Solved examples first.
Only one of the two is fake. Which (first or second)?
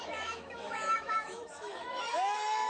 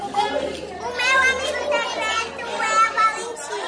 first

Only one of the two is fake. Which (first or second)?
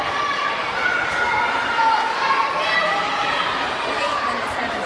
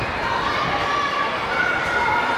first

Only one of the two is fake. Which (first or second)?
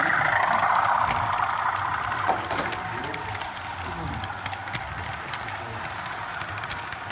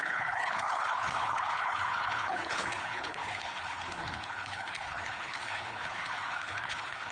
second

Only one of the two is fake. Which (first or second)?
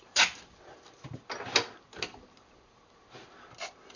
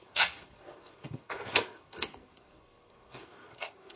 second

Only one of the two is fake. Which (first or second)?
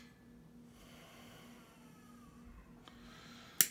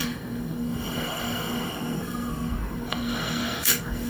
second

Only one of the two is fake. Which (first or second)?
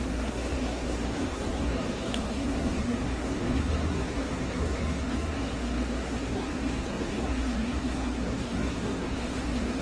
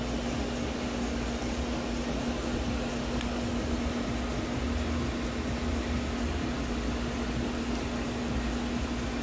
first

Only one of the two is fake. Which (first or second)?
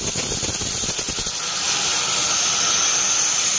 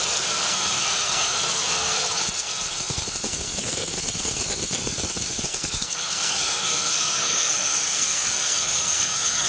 second